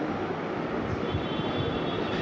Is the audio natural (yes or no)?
yes